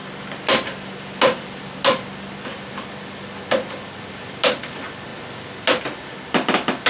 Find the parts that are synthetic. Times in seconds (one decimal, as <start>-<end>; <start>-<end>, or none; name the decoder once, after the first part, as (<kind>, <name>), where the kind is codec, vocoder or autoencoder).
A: none